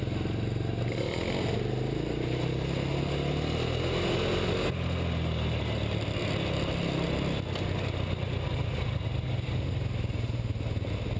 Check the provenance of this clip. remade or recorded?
recorded